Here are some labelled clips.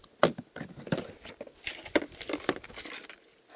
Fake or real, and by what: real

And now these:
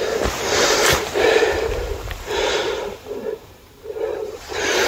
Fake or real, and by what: fake, vocoder, BigVGAN v2